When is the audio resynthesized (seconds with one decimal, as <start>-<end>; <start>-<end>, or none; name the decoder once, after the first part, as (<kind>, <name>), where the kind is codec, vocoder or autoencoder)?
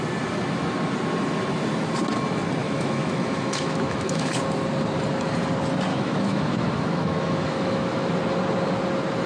2.6-4.4 (autoencoder, DAC-VAE); 5.9-8.1